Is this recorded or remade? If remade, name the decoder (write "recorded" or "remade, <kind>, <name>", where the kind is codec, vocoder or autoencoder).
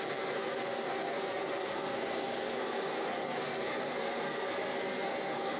remade, codec, SNAC